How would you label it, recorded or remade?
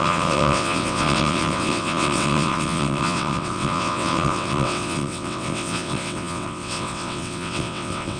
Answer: remade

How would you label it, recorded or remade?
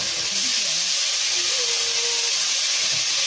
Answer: recorded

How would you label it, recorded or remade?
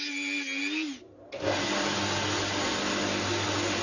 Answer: recorded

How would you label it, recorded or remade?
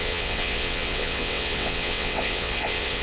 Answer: remade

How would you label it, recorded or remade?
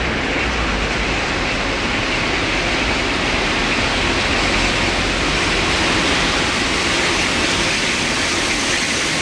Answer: recorded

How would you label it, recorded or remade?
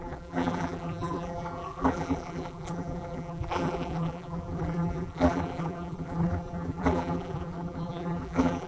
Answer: remade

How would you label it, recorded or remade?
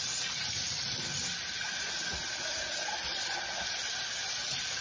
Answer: recorded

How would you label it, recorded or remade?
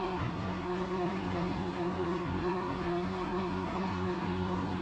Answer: remade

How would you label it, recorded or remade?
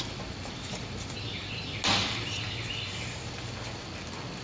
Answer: recorded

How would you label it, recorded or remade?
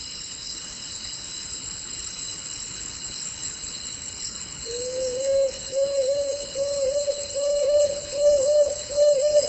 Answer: remade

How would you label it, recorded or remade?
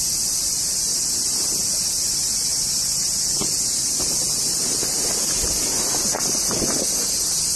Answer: recorded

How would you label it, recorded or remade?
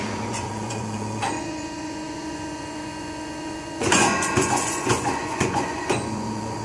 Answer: remade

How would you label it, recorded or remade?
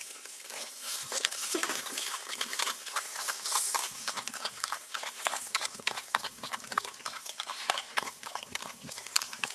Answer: remade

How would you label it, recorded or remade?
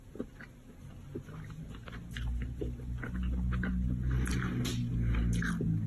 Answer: recorded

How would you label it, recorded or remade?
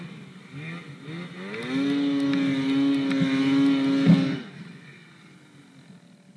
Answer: recorded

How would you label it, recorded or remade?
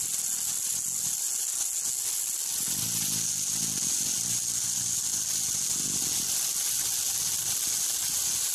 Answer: recorded